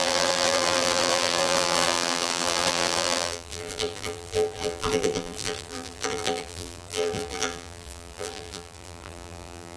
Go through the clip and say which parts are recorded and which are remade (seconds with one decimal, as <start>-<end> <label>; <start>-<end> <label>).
0.0-9.8 remade